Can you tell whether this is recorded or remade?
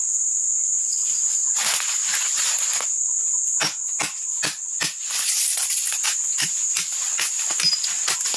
recorded